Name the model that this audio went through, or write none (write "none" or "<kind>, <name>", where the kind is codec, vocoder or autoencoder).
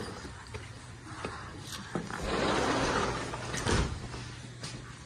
none